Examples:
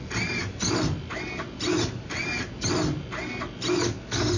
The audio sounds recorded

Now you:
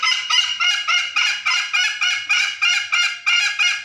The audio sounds recorded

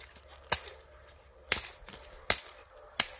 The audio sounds recorded